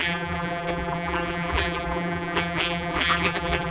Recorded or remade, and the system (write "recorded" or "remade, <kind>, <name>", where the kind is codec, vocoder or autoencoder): remade, vocoder, BigVGAN v2